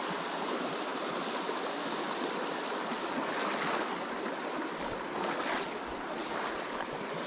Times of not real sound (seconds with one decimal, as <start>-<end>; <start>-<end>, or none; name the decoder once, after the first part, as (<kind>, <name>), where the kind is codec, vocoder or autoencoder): none